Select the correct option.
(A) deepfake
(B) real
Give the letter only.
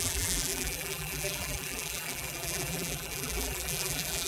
A